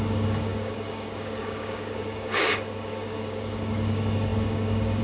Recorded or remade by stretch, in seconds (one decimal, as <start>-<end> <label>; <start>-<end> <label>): 0.0-5.0 remade